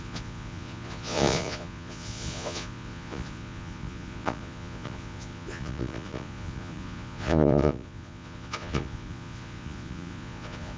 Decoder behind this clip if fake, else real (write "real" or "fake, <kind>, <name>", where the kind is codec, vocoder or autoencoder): fake, vocoder, Vocos